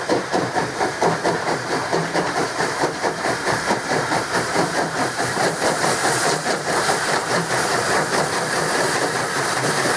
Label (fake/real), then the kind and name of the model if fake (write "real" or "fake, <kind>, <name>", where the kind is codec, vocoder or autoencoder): fake, vocoder, BigVGAN v2